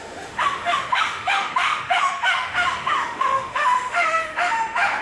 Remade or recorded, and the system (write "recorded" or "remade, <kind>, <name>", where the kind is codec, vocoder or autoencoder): remade, autoencoder, DAC-VAE